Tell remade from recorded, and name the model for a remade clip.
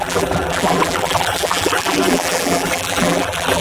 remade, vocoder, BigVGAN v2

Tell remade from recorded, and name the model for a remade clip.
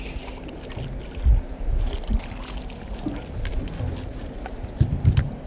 recorded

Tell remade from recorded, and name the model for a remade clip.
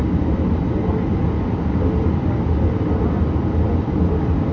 recorded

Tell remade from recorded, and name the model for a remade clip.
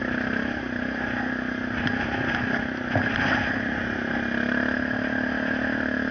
recorded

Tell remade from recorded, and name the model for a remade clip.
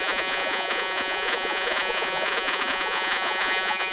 remade, vocoder, Vocos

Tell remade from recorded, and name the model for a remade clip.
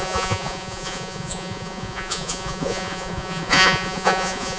remade, vocoder, Vocos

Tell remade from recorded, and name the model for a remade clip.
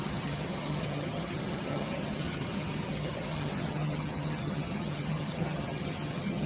remade, vocoder, HiFi-GAN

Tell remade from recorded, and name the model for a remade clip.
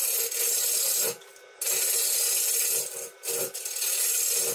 recorded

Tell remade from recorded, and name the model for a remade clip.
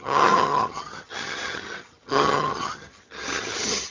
remade, vocoder, HiFi-GAN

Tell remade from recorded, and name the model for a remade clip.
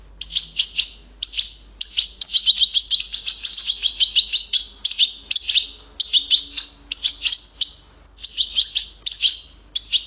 recorded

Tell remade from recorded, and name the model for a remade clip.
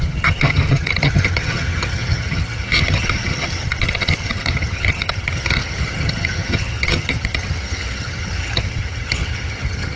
remade, vocoder, HiFi-GAN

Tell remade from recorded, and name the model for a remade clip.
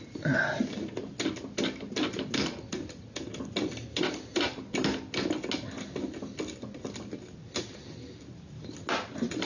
recorded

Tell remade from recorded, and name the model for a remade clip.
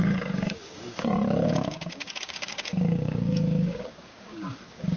remade, codec, DAC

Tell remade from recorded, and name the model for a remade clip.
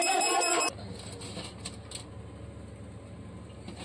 recorded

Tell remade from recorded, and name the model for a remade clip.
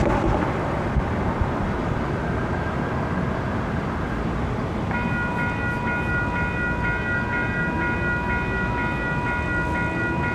recorded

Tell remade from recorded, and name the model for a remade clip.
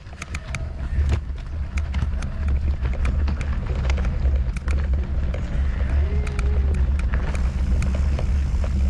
recorded